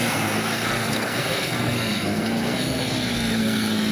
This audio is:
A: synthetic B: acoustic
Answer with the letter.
A